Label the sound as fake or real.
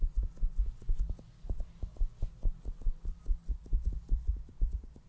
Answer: real